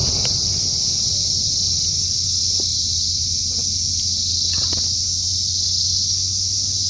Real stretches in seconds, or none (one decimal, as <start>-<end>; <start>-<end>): 0.0-2.7; 3.4-6.9